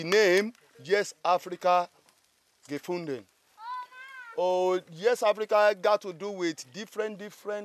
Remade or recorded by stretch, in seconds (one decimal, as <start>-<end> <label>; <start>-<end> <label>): 0.0-7.6 recorded